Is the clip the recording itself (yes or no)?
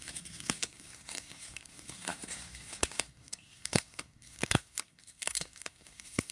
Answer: no